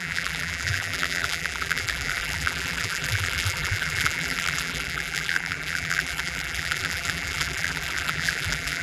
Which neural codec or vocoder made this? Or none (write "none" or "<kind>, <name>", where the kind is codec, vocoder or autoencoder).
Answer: vocoder, BigVGAN v2